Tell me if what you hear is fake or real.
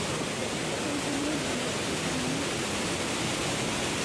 real